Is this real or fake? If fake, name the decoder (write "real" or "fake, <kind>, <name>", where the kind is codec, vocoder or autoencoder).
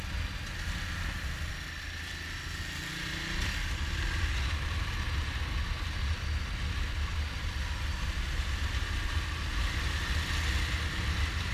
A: real